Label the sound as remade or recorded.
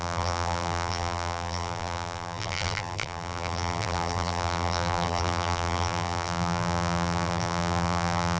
remade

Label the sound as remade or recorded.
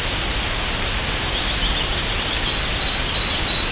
recorded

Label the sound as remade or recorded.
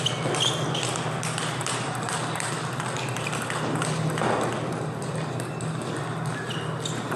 recorded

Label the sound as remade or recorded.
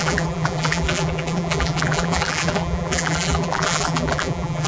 remade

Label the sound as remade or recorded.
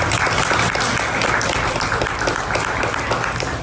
recorded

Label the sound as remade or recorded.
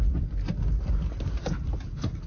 recorded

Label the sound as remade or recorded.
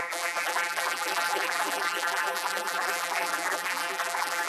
remade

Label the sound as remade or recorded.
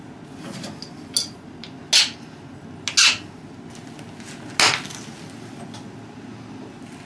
recorded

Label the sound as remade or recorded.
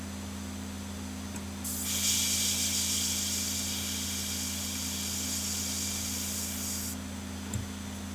recorded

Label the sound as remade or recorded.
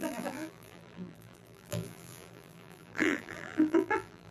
remade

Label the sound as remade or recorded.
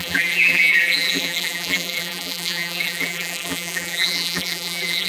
remade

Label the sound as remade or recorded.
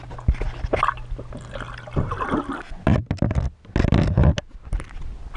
recorded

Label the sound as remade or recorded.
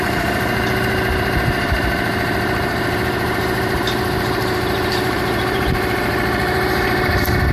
remade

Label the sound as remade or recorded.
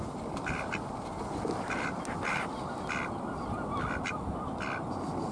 recorded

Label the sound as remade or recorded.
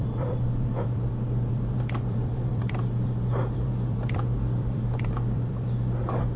remade